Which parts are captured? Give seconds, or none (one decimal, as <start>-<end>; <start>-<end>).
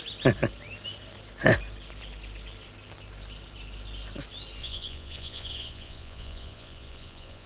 0.0-4.6